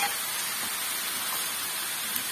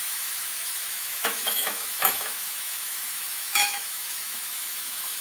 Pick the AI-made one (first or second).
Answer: second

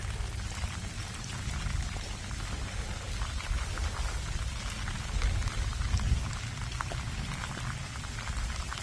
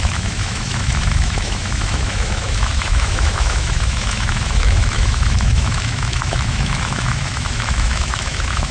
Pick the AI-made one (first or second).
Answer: second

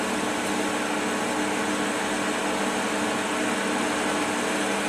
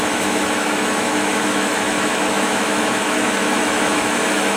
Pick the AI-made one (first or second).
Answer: second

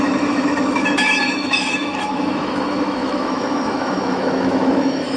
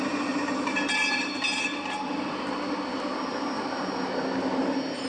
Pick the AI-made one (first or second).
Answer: first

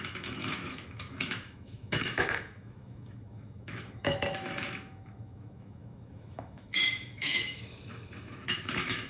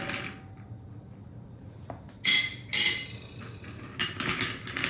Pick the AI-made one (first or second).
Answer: first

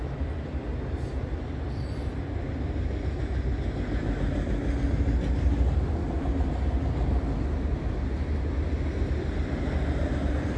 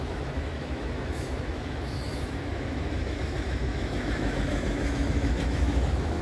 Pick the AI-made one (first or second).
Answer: second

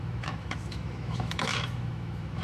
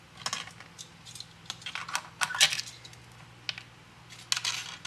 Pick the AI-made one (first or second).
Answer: first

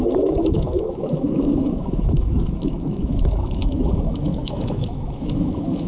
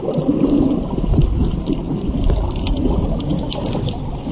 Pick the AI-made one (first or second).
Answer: first